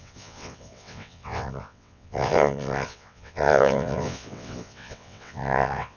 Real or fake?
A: fake